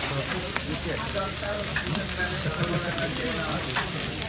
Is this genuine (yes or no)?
no